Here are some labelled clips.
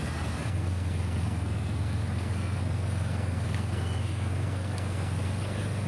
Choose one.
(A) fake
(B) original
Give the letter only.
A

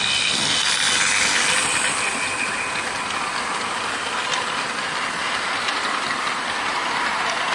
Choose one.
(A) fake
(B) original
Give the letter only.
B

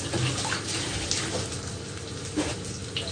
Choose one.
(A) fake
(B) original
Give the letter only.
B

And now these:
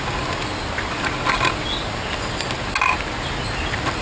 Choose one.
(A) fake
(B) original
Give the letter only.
B